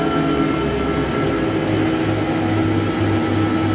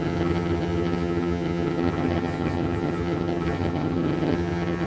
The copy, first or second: second